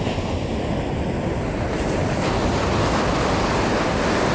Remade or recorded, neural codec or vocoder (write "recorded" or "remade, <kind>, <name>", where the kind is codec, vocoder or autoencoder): recorded